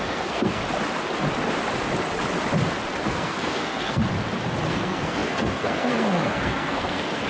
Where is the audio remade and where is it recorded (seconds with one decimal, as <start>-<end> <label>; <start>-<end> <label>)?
0.0-0.6 remade; 0.6-3.0 recorded; 3.0-4.0 remade; 4.0-4.7 recorded; 4.7-7.3 remade